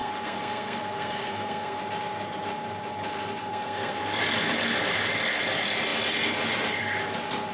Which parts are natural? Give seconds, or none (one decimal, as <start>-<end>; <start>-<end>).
1.8-3.4; 4.0-7.5